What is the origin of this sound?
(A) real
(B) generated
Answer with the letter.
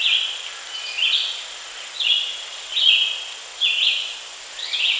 A